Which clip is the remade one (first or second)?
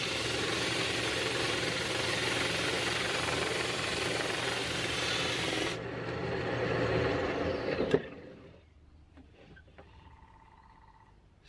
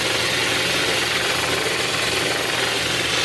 first